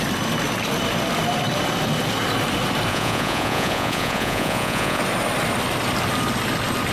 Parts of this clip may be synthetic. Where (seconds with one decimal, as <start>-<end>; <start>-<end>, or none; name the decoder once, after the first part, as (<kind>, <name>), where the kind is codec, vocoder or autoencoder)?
2.9-5.0 (vocoder, Vocos)